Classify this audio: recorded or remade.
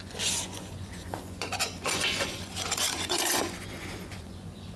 remade